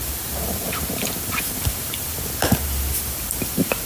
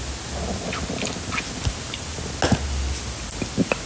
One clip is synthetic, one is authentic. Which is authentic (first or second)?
second